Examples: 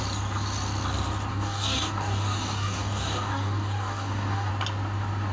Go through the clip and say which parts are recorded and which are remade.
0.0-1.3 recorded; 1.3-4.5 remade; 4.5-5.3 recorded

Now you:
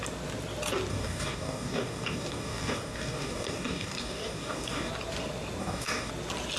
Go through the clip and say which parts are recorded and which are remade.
0.0-0.9 recorded; 0.9-4.9 remade; 4.9-5.6 recorded; 5.6-6.1 remade; 6.1-6.6 recorded

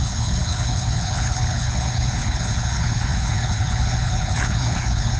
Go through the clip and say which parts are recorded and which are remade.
0.0-5.2 remade

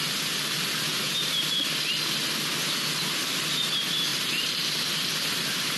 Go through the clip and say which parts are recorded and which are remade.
0.0-4.1 recorded; 4.1-5.8 remade

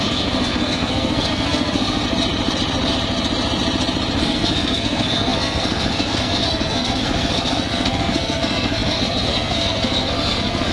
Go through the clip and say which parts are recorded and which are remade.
0.0-2.0 remade; 2.0-4.2 recorded; 4.2-10.7 remade

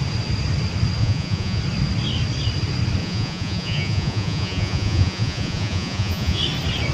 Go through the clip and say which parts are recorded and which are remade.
0.0-1.0 recorded; 1.0-1.6 remade; 1.6-3.0 recorded; 3.0-6.4 remade; 6.4-6.9 recorded

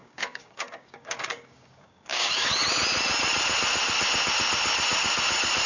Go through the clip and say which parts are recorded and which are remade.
0.0-2.5 remade; 2.5-5.7 recorded